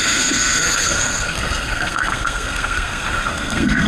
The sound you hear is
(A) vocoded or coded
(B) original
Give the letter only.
A